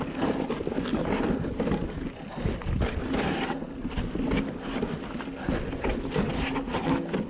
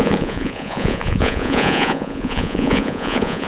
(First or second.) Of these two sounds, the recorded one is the first